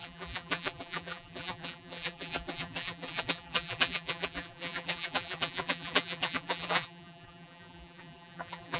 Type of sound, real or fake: fake